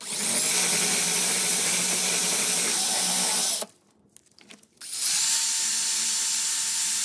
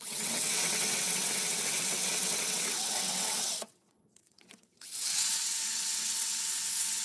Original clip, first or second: first